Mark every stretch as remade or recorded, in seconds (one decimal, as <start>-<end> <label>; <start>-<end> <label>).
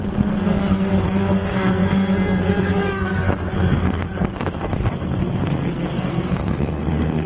0.0-7.3 remade